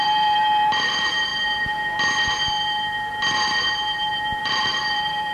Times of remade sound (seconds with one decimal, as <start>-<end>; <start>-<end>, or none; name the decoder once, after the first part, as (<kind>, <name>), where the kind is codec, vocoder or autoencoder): 0.0-1.3 (vocoder, BigVGAN v2); 4.4-5.3